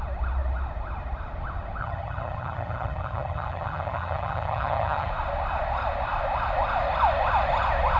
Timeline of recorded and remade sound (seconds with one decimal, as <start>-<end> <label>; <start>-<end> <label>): 0.0-1.8 recorded; 1.8-5.1 remade; 5.1-8.0 recorded